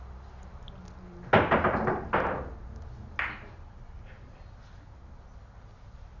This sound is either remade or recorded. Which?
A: recorded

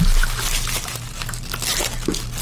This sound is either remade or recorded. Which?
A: recorded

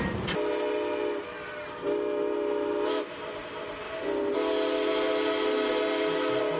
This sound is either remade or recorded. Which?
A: recorded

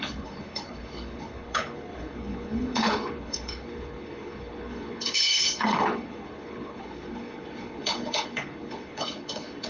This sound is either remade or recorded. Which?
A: remade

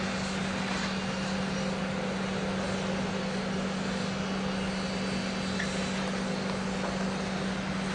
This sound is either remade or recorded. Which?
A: recorded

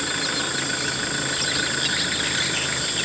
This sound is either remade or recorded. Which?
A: recorded